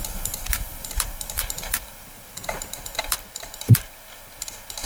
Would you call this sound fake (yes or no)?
yes